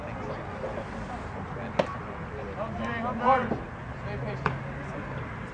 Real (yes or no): yes